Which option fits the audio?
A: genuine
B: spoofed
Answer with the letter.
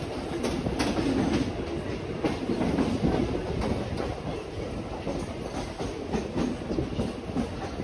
A